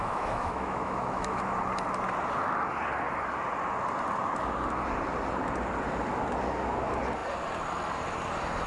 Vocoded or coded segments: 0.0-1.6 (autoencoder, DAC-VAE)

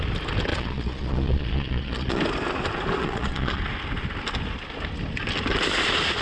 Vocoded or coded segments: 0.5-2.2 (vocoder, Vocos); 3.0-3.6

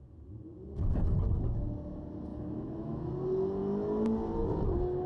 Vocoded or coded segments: 2.3-3.1 (autoencoder, DAC-VAE)

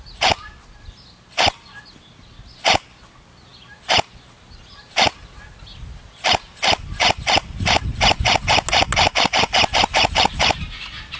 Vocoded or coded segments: none

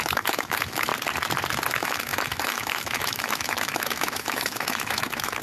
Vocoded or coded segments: 0.0-0.9 (autoencoder, DAC-VAE); 1.7-5.4

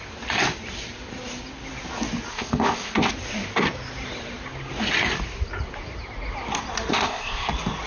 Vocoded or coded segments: 2.3-3.1 (codec, ZipCodec); 6.9-7.5

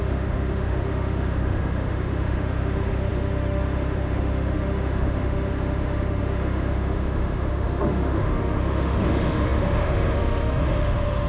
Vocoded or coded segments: 0.0-11.3 (autoencoder, DAC-VAE)

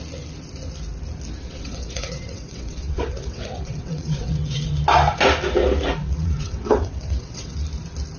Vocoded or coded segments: 1.4-4.7 (vocoder, WaveNeXt); 6.0-7.6